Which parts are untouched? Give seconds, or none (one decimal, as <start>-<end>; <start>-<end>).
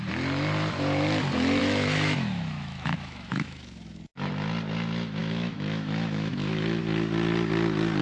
0.0-1.6; 4.3-5.2; 6.8-8.0